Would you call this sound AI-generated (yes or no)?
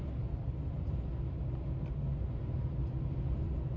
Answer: no